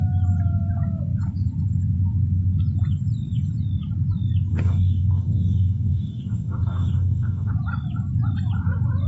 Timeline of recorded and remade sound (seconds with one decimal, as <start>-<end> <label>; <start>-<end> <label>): 0.0-4.5 recorded; 4.5-7.5 remade; 7.5-9.1 recorded